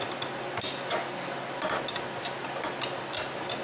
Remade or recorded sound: recorded